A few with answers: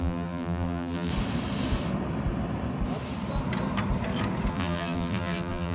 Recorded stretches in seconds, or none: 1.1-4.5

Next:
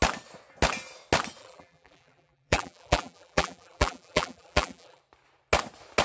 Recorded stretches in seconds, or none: 0.0-1.4; 5.0-6.0

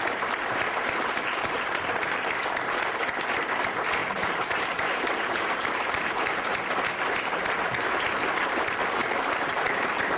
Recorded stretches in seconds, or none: 0.0-4.0; 6.4-9.0

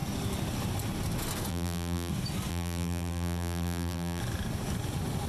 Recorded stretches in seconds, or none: 0.0-1.5; 2.1-2.5; 4.2-5.3

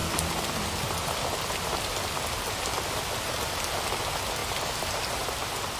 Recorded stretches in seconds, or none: 3.5-5.8

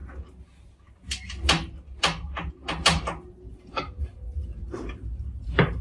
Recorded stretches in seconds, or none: 0.0-3.5

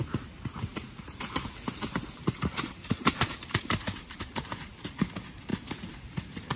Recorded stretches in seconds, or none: 0.0-0.7; 4.7-6.6

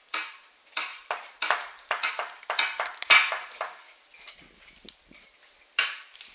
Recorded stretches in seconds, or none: 0.0-0.9; 2.1-6.3